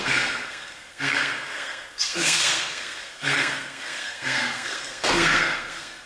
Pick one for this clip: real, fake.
fake